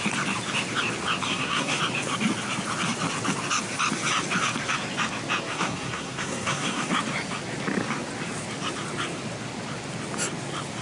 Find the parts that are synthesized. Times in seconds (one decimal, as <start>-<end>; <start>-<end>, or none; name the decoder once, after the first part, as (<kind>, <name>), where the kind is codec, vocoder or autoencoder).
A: 1.3-1.8 (codec, SNAC); 5.5-6.9